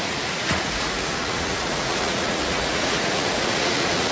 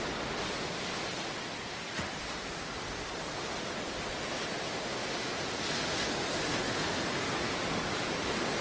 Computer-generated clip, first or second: first